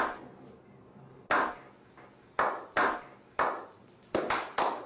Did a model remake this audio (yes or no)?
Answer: no